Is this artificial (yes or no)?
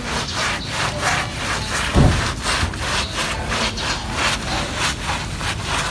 no